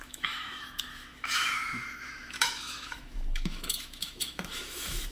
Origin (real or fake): fake